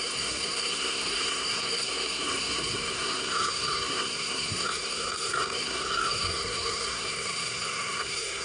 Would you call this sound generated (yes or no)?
yes